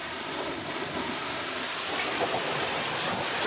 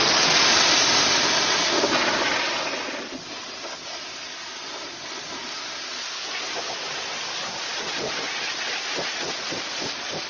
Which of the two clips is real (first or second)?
second